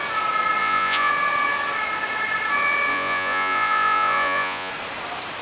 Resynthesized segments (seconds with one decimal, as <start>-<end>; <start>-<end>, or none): 0.6-1.1; 2.9-4.7